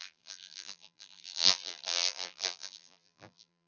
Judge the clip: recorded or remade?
remade